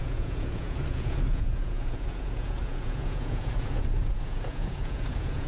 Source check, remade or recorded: remade